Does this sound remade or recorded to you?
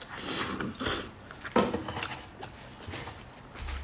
recorded